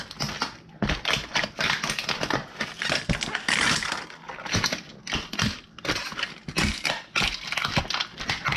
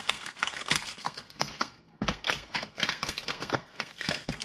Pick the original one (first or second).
first